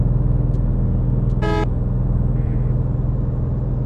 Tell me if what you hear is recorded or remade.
recorded